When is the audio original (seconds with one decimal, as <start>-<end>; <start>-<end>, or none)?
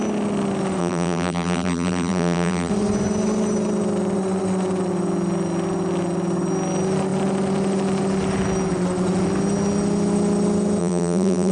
0.0-0.8; 2.7-10.8